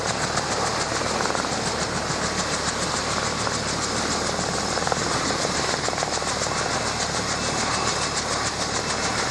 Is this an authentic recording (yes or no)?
yes